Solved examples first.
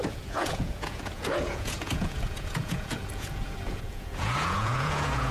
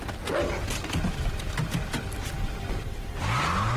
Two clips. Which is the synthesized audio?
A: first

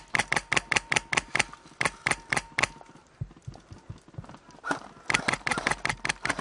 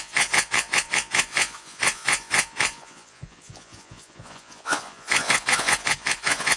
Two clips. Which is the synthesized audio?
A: second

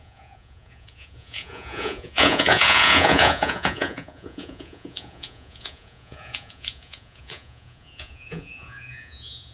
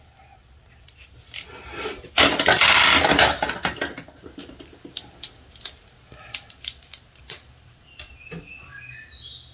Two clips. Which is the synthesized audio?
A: first